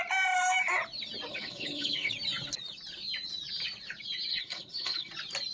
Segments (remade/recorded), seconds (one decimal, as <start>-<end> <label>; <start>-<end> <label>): 0.0-1.3 recorded; 1.3-2.1 remade; 2.1-4.3 recorded; 4.3-5.1 remade; 5.1-5.5 recorded